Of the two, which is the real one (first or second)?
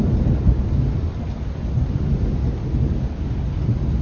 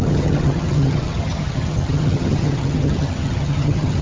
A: first